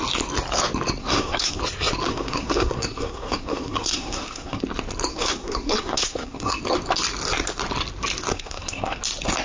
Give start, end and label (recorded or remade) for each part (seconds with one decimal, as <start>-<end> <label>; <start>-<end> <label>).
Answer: 0.0-1.0 recorded; 1.0-1.6 remade; 1.6-2.1 recorded; 2.1-4.6 remade; 4.6-5.1 recorded; 5.1-6.6 remade; 6.6-8.3 recorded; 8.3-9.0 remade; 9.0-9.4 recorded